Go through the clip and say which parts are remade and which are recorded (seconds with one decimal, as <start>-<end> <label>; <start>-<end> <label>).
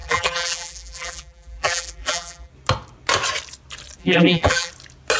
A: 0.0-2.5 remade; 2.5-4.0 recorded; 4.0-4.7 remade; 4.7-5.2 recorded